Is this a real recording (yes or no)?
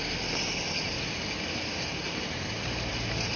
yes